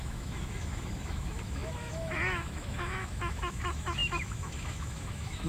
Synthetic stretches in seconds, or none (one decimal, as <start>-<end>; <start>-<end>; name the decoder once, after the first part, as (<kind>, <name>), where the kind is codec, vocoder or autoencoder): 0.0-5.5 (autoencoder, DAC-VAE)